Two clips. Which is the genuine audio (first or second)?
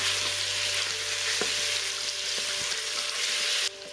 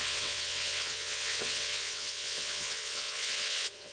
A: first